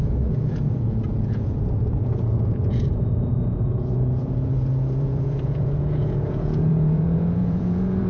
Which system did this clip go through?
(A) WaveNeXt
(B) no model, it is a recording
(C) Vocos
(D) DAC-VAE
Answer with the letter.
C